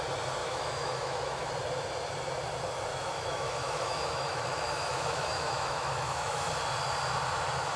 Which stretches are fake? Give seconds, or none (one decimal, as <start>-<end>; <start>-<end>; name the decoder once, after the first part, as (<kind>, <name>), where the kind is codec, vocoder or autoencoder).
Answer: 0.4-1.5 (autoencoder, DAC-VAE); 2.9-6.5